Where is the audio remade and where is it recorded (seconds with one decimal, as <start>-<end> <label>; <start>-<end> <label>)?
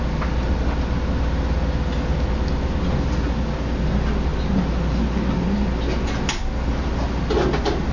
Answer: 0.0-7.9 recorded